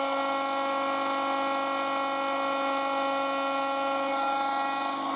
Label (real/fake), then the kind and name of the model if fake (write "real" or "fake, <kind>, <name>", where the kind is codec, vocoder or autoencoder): real